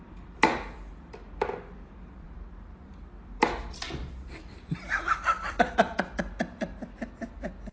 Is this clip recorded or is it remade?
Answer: remade